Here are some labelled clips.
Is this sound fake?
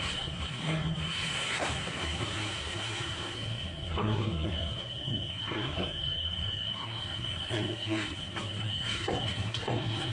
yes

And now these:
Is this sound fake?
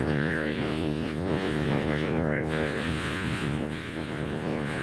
yes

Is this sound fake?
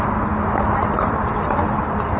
no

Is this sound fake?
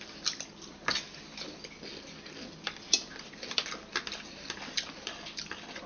no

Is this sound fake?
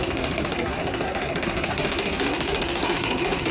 yes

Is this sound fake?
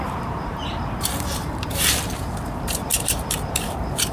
yes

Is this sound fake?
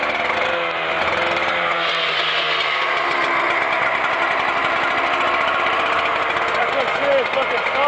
no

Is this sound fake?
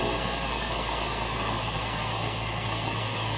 yes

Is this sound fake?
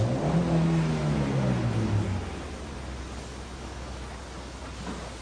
no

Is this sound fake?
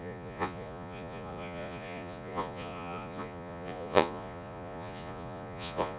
yes